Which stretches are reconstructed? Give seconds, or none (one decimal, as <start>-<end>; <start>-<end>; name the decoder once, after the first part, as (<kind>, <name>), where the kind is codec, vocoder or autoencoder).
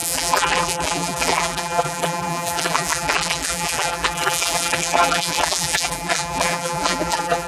0.0-7.5 (vocoder, BigVGAN v2)